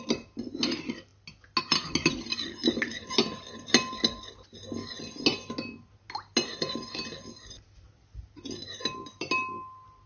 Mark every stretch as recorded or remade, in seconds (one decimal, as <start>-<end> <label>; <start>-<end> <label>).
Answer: 0.0-10.1 recorded